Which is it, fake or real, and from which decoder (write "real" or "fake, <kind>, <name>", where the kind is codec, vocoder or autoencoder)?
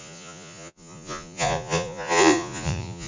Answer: fake, vocoder, Vocos